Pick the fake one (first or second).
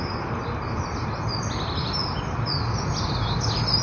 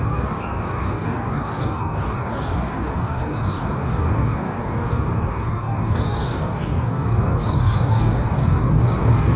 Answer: second